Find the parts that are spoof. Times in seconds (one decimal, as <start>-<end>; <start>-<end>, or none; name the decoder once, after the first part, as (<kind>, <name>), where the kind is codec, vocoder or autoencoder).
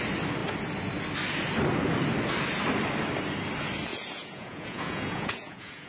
3.9-5.9 (vocoder, Vocos)